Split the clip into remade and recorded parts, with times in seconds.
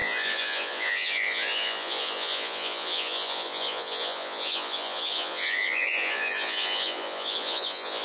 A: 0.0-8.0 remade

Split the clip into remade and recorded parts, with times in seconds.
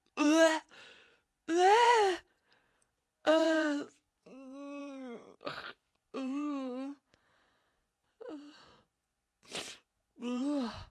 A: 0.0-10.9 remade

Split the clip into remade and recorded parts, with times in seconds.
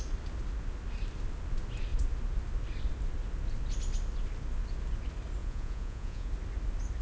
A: 0.0-5.4 recorded; 5.4-6.3 remade; 6.3-7.0 recorded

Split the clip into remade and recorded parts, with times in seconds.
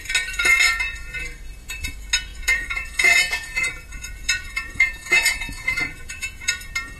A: 0.0-2.3 recorded; 2.3-6.5 remade; 6.5-7.0 recorded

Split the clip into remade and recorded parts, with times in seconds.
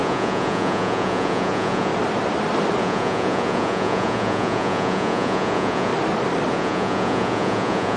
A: 0.0-1.9 remade; 1.9-2.8 recorded; 2.8-5.9 remade; 5.9-6.5 recorded; 6.5-8.0 remade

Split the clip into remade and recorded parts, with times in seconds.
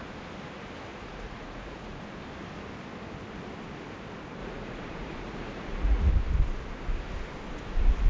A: 0.0-0.9 recorded; 0.9-2.0 remade; 2.0-4.4 recorded; 4.4-6.1 remade; 6.1-8.1 recorded